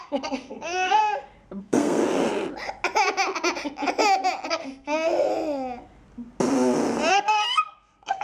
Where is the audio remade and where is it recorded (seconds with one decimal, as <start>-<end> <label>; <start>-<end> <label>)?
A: 0.0-1.0 remade; 1.0-1.6 recorded; 1.6-2.0 remade; 2.0-4.5 recorded; 4.5-5.3 remade; 5.3-7.1 recorded; 7.1-8.2 remade